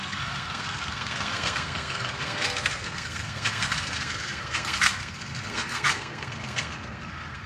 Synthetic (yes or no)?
yes